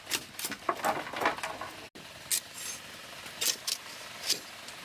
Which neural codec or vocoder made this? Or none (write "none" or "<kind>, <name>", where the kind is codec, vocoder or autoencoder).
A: none